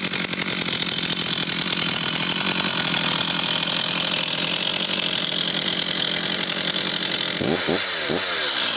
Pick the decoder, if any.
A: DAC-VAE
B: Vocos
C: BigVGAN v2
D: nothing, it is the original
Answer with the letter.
D